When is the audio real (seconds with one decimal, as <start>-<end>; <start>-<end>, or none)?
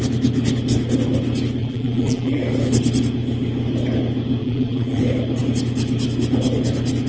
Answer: 0.0-1.6; 2.4-4.4; 5.0-7.1